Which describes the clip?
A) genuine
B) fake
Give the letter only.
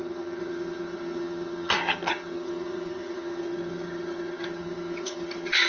B